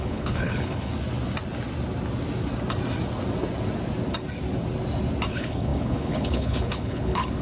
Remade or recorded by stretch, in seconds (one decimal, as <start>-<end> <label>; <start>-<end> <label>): 0.0-0.9 remade; 0.9-5.3 recorded; 5.3-7.4 remade